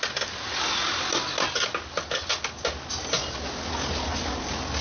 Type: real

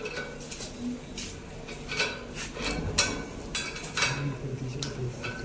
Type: real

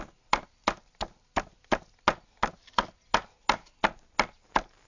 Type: real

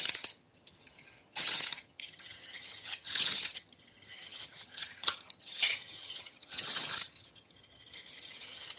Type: fake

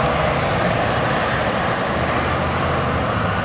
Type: real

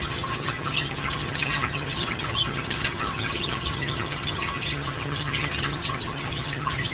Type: fake